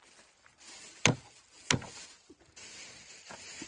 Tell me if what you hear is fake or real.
real